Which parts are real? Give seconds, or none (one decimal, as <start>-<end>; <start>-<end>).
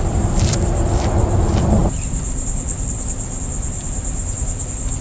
0.0-5.0